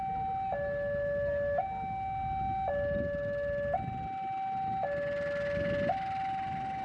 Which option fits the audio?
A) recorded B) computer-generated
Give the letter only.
A